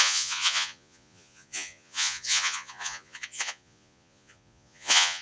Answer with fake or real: fake